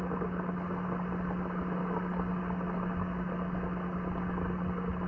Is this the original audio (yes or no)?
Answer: yes